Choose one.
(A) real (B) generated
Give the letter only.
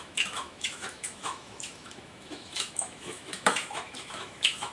B